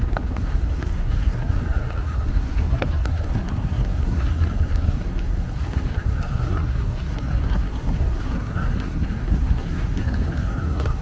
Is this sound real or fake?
fake